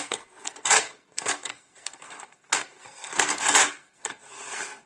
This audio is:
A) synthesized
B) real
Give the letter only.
A